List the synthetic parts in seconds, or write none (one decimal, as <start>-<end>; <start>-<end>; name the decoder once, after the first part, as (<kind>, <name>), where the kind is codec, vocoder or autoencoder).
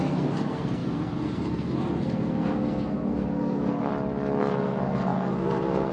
0.0-3.9 (codec, SNAC); 4.4-5.9